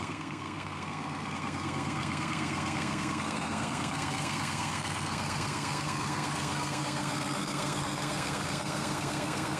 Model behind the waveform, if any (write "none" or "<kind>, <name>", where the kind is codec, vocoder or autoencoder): codec, SNAC